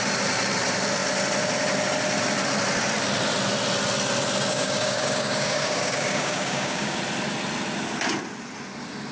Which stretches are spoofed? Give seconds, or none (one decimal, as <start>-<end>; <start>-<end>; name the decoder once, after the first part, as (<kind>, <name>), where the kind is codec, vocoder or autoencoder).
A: 4.5-7.0 (codec, DAC)